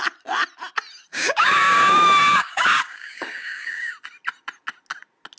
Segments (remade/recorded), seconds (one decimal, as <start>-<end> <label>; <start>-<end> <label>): 0.0-1.1 recorded; 1.1-3.9 remade; 3.9-5.4 recorded